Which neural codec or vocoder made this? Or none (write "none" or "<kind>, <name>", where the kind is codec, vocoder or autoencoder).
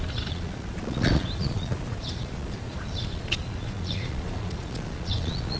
vocoder, Vocos